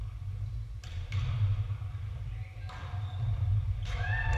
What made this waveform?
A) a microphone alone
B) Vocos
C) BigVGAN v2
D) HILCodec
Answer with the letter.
A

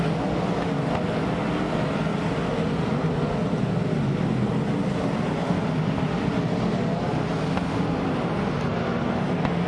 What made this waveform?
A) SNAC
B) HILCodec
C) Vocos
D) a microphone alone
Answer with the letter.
D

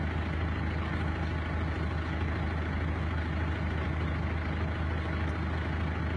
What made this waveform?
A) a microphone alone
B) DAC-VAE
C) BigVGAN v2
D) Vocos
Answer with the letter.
A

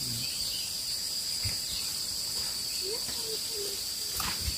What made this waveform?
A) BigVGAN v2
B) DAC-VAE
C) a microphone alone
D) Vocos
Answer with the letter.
C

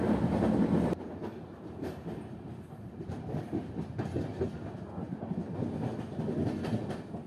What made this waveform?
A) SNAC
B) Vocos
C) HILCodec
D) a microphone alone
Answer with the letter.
D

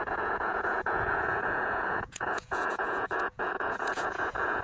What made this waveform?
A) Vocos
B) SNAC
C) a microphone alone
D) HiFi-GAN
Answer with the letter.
A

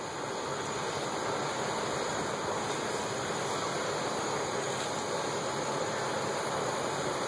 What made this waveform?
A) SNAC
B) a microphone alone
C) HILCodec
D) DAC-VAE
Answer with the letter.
B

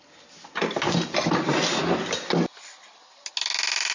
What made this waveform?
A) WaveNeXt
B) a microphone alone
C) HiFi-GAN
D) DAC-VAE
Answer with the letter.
B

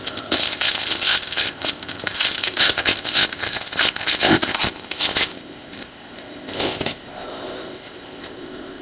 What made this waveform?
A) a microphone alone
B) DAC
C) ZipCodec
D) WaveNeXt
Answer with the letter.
C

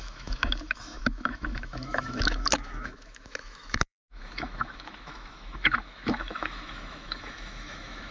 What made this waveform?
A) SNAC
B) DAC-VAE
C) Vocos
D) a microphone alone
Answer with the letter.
B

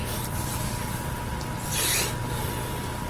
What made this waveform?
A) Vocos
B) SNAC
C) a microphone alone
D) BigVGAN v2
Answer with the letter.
C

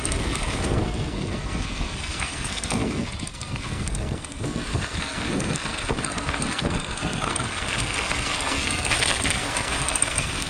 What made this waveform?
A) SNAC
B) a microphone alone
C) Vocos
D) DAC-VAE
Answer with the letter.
A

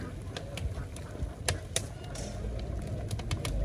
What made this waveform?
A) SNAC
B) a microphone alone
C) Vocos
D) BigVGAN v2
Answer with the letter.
B